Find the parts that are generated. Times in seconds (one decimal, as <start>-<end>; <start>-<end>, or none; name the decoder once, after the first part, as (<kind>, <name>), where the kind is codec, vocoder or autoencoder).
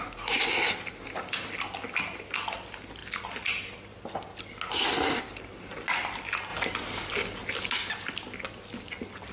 none